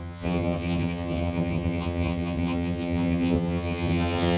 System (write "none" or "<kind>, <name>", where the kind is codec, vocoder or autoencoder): vocoder, HiFi-GAN